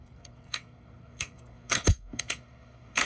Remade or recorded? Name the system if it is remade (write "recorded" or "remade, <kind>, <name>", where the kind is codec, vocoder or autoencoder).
remade, codec, SNAC